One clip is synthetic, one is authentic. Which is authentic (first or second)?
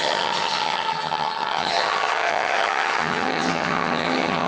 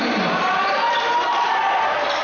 second